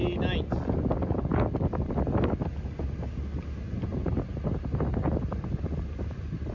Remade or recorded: recorded